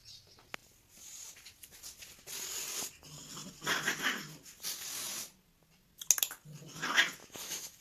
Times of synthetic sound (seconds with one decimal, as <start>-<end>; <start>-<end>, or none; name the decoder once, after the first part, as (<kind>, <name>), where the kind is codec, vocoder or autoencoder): 7.2-7.8 (autoencoder, DAC-VAE)